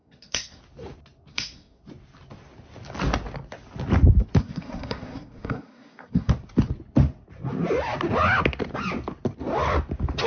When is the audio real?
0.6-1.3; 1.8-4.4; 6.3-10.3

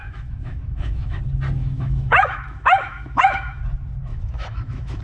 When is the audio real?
1.2-1.6; 3.6-4.1

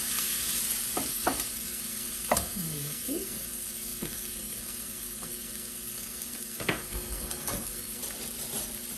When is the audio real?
0.6-1.1; 8.0-9.0

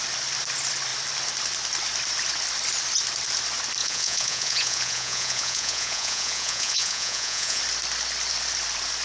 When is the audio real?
0.0-3.8; 7.6-9.0

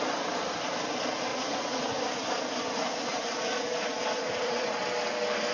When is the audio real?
0.0-1.3; 2.0-3.1; 4.8-5.5